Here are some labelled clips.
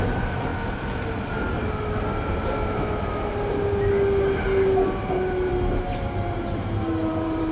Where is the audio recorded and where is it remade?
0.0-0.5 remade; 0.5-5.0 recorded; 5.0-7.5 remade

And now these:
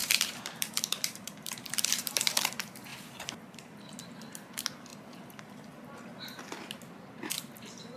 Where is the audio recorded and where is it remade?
0.0-2.4 remade; 2.4-2.9 recorded; 2.9-3.7 remade; 3.7-8.0 recorded

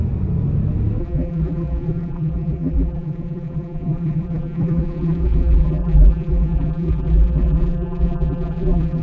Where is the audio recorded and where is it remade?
0.0-1.0 recorded; 1.0-9.0 remade